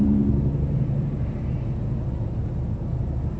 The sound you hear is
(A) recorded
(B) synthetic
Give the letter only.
A